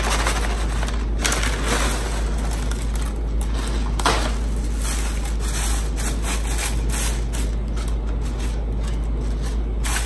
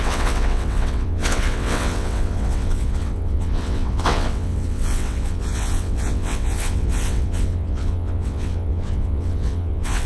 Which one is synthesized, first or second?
second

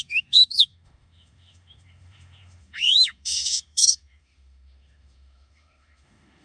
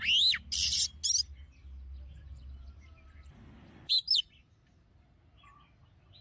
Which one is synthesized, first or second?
first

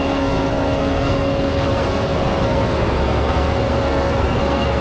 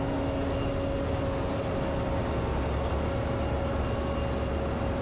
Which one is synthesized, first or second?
first